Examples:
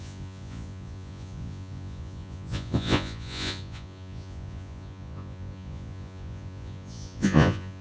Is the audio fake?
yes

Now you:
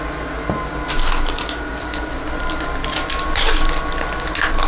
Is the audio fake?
no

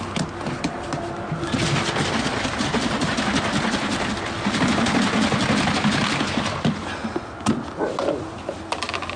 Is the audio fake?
no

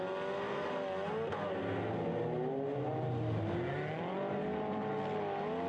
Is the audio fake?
no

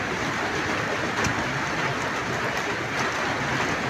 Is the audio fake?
no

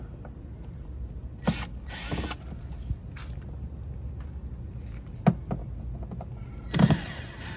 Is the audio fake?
no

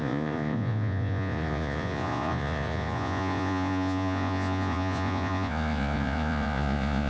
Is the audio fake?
yes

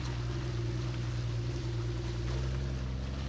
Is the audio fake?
no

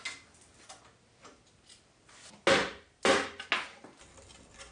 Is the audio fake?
no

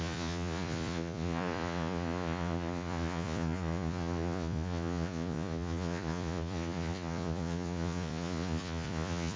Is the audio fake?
yes